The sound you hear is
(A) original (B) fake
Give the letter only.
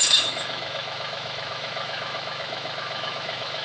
B